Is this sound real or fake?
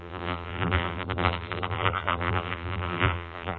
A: fake